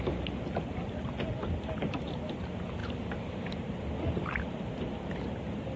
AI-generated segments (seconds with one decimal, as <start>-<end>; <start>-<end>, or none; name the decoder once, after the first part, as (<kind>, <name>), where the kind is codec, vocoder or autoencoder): none